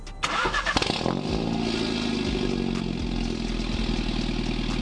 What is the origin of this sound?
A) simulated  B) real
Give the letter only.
B